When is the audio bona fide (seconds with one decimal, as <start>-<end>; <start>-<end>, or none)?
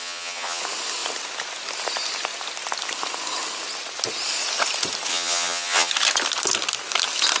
0.6-5.1; 5.9-7.4